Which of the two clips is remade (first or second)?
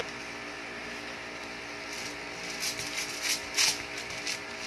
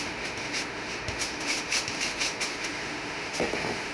second